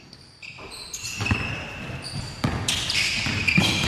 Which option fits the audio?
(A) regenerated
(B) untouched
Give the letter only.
B